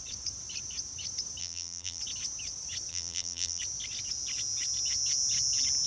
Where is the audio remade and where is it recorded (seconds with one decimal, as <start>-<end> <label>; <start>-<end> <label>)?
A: 0.0-1.4 recorded; 1.4-2.0 remade; 2.0-2.9 recorded; 2.9-3.6 remade; 3.6-5.9 recorded